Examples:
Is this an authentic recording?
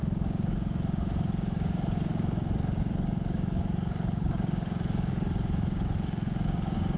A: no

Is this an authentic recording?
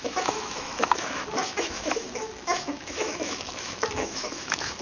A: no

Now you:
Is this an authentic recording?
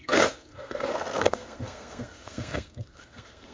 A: no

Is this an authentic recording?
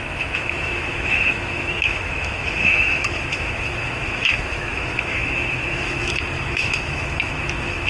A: no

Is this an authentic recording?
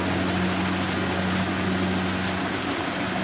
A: yes